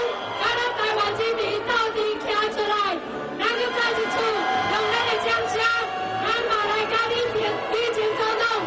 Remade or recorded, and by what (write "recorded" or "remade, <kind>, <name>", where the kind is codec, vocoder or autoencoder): remade, vocoder, BigVGAN v2